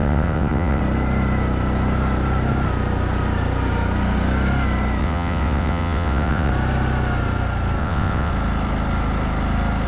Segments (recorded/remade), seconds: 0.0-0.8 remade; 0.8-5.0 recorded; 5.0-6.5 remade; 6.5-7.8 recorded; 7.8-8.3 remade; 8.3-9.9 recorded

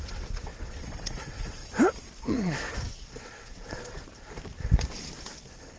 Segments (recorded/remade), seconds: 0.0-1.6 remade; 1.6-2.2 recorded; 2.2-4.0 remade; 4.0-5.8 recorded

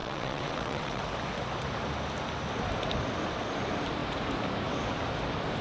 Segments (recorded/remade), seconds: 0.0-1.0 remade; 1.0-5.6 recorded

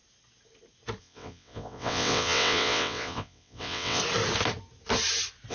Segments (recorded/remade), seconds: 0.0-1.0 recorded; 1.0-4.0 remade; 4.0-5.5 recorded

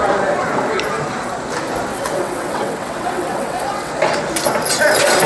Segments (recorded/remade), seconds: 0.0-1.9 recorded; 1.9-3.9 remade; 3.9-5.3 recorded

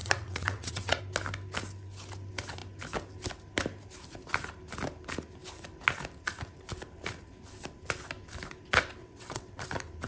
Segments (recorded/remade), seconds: 0.0-1.0 remade; 1.0-9.0 recorded; 9.0-9.6 remade; 9.6-10.1 recorded

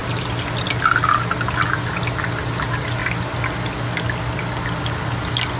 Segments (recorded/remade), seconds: 0.0-5.6 recorded

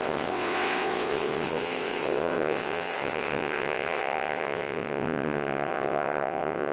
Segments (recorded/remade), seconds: 0.0-6.7 remade